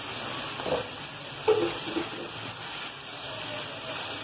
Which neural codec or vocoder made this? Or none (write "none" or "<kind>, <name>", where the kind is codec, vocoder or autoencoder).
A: none